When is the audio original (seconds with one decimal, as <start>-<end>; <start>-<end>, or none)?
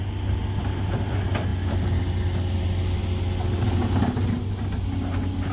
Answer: 0.0-5.5